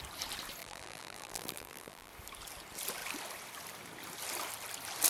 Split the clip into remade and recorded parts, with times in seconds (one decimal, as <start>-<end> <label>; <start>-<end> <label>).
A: 0.0-0.6 recorded; 0.6-2.1 remade; 2.1-5.1 recorded